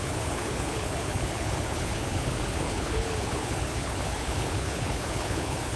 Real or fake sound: fake